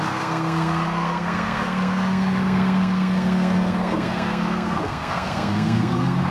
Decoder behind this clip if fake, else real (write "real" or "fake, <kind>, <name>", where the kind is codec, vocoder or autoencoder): fake, codec, SNAC